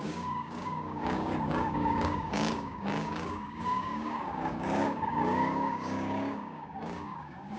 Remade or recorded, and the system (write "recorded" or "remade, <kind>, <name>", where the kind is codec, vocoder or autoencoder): remade, codec, DAC